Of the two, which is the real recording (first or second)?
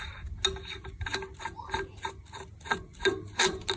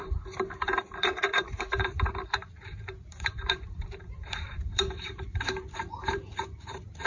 first